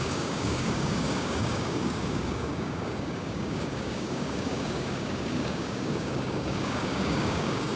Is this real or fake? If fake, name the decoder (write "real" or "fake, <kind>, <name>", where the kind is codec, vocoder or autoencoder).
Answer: fake, codec, DAC